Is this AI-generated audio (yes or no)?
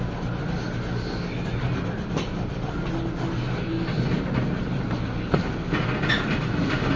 no